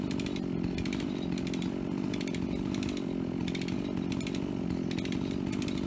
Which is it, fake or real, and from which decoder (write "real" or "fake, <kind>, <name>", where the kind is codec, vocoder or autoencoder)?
real